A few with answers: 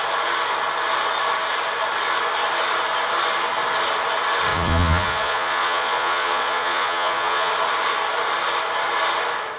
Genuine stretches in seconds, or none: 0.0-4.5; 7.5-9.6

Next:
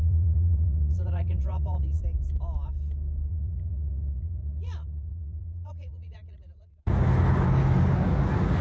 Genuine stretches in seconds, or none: 2.0-3.3; 6.9-8.6

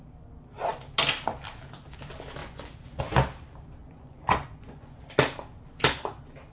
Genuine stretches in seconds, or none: 0.0-2.4; 3.0-3.8; 5.0-6.5

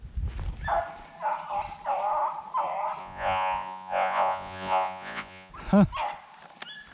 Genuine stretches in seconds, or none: 0.0-3.0; 5.5-6.9

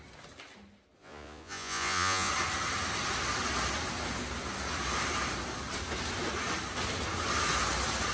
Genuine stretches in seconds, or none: 0.0-1.0; 2.3-8.1

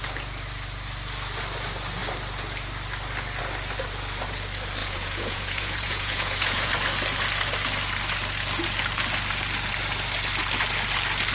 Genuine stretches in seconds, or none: 0.0-4.8; 6.7-11.3

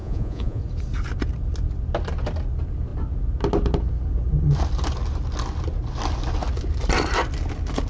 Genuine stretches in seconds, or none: 0.6-7.9

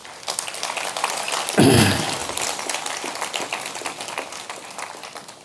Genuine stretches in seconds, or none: 0.0-5.4